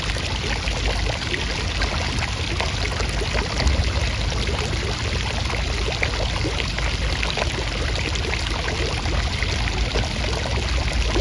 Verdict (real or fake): real